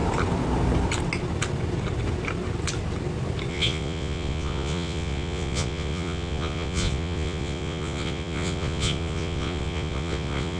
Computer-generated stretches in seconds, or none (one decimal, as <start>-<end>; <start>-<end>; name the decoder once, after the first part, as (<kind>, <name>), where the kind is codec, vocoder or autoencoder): 3.5-10.6 (vocoder, Vocos)

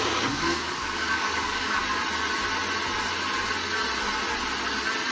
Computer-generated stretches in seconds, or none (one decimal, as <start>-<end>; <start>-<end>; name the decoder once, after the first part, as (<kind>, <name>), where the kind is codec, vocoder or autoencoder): 0.0-1.8 (codec, DAC)

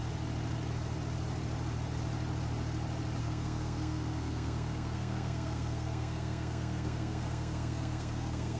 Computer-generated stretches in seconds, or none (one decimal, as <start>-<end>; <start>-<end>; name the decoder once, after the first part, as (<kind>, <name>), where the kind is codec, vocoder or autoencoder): 3.2-8.6 (codec, SNAC)

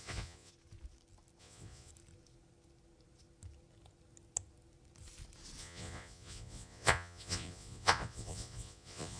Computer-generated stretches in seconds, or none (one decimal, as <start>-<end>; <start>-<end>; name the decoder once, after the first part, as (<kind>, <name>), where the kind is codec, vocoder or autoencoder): 0.0-0.5 (vocoder, Vocos); 1.4-1.9; 5.6-9.2

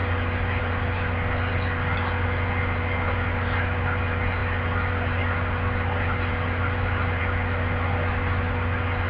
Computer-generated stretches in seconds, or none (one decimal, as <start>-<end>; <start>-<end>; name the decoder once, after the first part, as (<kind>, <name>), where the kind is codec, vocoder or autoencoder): none

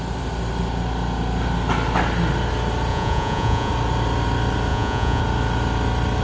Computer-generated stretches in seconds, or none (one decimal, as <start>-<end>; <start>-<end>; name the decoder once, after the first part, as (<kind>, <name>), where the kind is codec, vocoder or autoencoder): 2.9-3.7 (vocoder, Vocos); 4.7-5.2

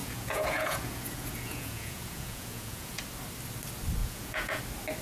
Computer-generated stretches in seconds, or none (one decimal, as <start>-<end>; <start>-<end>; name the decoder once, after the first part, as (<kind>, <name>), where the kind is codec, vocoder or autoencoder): 0.0-3.0 (vocoder, Vocos); 4.0-4.6

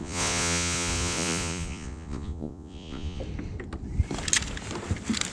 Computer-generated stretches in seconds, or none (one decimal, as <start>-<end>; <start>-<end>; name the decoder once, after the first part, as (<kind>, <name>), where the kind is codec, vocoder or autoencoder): 0.0-3.2 (vocoder, Vocos)